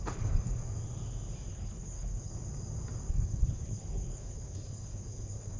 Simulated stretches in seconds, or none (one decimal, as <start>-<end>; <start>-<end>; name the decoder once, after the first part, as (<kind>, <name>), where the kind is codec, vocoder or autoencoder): 0.0-0.6 (codec, HILCodec); 1.5-2.3; 3.1-5.6